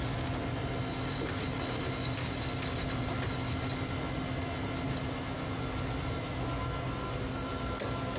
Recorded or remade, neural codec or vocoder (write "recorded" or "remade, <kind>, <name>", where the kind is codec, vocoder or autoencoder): recorded